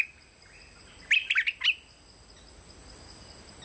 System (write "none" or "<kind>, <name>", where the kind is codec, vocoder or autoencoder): none